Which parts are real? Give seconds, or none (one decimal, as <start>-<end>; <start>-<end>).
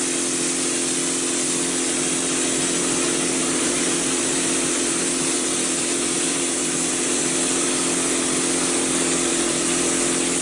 0.0-2.8; 7.7-9.3; 9.8-10.4